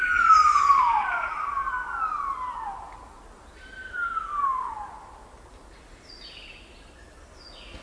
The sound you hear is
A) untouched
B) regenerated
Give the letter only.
A